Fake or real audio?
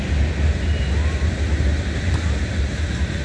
real